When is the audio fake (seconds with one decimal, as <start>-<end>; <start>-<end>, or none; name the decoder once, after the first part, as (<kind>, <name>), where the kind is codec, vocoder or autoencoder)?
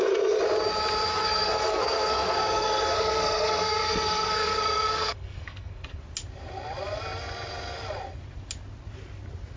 1.1-6.0 (codec, SNAC)